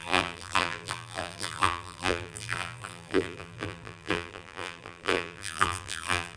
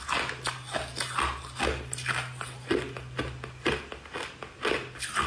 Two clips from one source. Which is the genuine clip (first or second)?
second